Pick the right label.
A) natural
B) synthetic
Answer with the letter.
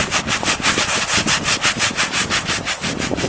B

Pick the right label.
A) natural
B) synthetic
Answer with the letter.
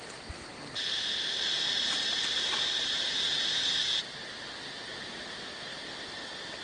A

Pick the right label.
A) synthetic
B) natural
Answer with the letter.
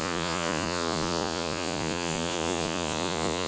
A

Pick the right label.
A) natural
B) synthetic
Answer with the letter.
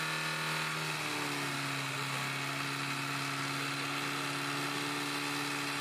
A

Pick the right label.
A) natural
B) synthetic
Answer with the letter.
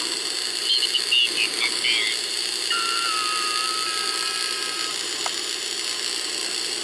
A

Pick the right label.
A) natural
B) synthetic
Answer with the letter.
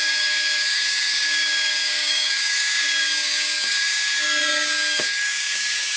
B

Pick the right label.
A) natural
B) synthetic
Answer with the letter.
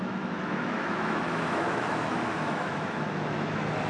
B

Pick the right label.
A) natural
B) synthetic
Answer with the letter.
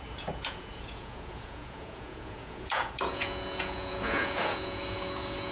B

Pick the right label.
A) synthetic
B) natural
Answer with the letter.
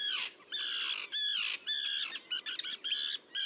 B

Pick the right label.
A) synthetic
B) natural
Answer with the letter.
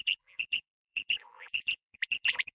A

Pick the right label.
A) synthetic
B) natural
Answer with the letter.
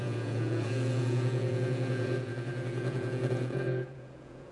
A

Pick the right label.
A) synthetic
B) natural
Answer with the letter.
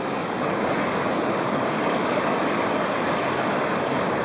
A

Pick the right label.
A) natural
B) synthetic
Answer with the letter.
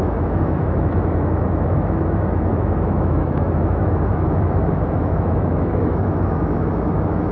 B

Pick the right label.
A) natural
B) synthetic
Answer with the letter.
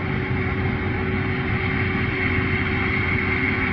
A